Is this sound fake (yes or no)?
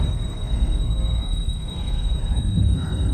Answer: yes